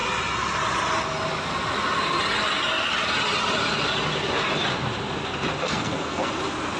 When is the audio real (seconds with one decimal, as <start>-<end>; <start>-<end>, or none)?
0.0-5.6; 6.3-6.8